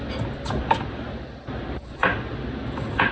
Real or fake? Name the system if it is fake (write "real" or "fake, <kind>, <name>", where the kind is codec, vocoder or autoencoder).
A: real